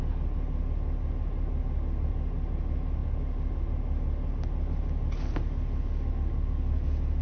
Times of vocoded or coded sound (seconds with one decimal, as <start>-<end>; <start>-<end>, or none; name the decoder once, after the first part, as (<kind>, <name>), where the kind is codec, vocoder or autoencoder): none